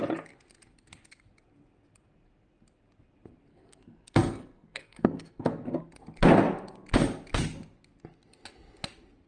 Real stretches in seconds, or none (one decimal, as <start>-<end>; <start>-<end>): 0.0-3.5; 5.8-9.3